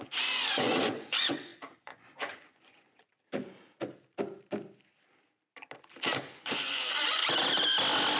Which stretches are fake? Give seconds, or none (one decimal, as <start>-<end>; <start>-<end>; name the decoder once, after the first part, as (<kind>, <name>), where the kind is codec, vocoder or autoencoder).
0.0-3.1 (vocoder, Vocos); 6.2-7.2